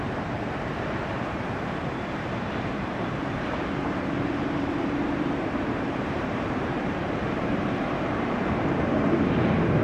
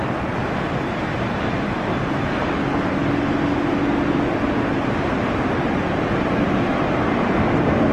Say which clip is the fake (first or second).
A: first